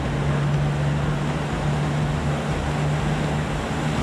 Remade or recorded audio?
recorded